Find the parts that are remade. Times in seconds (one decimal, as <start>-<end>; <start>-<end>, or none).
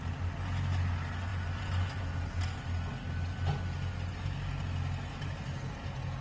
1.3-2.4; 5.1-5.7